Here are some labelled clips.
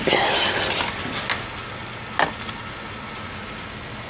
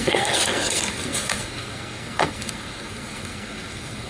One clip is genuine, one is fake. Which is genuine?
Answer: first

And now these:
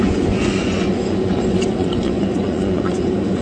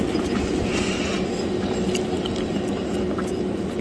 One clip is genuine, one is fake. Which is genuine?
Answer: second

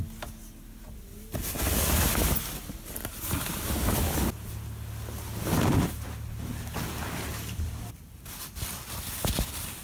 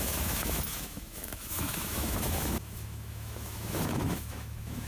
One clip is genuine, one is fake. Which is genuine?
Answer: first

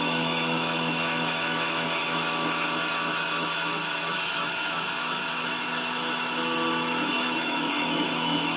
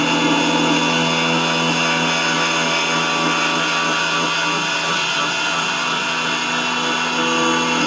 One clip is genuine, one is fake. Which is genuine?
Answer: second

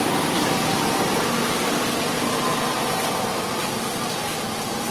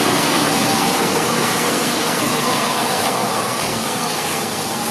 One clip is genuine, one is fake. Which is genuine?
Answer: first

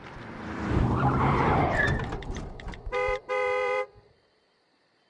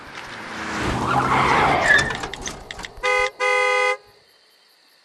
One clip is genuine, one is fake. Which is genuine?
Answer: second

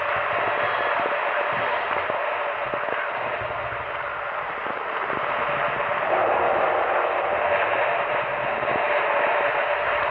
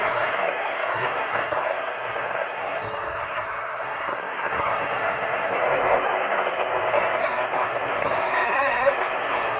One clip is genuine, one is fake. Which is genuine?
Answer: first